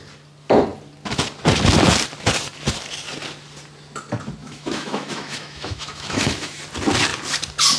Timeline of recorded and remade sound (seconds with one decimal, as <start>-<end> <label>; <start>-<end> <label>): 0.0-4.4 recorded; 4.4-6.6 remade; 6.6-7.8 recorded